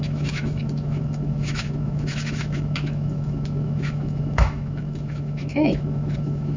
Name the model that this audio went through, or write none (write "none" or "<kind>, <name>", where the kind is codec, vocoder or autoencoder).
autoencoder, DAC-VAE